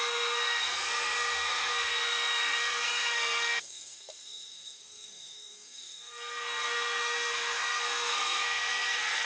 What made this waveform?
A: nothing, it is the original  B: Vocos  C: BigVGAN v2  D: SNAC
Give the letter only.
D